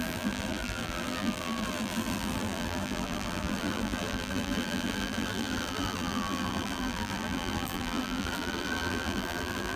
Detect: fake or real fake